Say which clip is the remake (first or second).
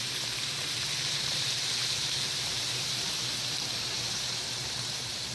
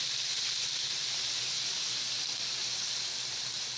first